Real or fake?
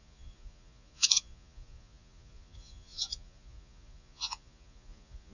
fake